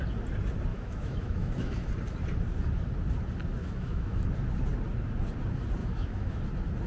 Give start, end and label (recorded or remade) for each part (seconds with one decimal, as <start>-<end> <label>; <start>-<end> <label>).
0.0-0.7 recorded; 0.7-1.9 remade; 1.9-3.6 recorded; 3.6-4.2 remade; 4.2-5.8 recorded; 5.8-6.4 remade; 6.4-6.9 recorded